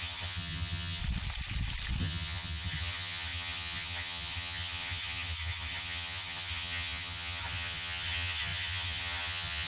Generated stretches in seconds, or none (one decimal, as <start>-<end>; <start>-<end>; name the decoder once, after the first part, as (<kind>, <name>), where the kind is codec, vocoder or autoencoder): 0.0-1.0 (vocoder, HiFi-GAN); 2.0-9.7

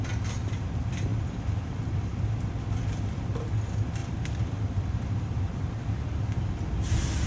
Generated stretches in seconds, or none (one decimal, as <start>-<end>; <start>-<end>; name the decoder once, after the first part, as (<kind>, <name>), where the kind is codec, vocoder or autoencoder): 1.1-2.5 (vocoder, BigVGAN v2); 4.0-6.5

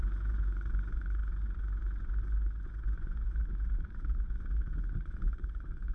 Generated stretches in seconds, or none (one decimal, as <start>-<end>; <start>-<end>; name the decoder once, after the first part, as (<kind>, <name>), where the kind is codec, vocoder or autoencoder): 0.0-5.9 (vocoder, Vocos)

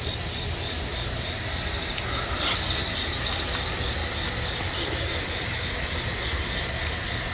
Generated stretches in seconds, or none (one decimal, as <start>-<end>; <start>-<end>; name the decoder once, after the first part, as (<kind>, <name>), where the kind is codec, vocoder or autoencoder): 4.0-5.3 (vocoder, BigVGAN v2)